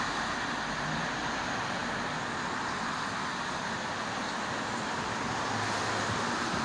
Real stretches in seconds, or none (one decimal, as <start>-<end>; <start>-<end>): 0.0-6.6